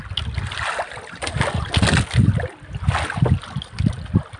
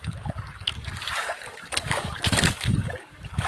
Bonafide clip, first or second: first